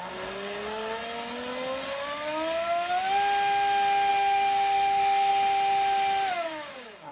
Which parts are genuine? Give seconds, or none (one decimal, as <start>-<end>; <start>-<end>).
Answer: 1.0-4.1; 5.3-6.3

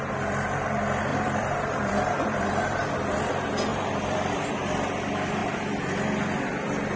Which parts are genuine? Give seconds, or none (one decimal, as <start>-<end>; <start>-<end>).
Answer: 0.0-1.1; 2.9-3.7; 4.3-7.0

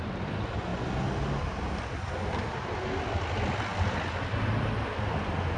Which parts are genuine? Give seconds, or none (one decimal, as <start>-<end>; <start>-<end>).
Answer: 0.0-5.6

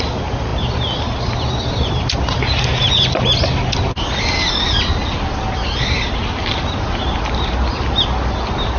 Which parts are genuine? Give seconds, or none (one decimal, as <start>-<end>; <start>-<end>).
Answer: 0.0-8.8

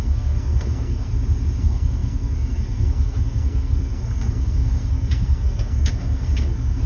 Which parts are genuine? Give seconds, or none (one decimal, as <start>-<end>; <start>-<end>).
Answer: 1.1-1.6

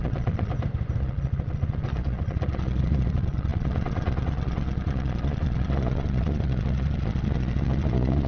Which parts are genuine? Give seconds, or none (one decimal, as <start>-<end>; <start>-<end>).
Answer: 0.5-1.0